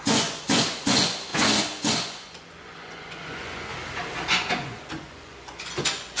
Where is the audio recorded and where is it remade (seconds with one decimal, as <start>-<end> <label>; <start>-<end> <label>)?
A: 0.0-3.7 remade; 3.7-4.3 recorded; 4.3-6.2 remade